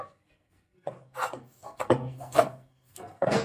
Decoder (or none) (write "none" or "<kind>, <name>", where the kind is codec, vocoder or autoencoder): codec, SNAC